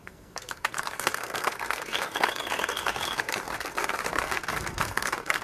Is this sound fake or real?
fake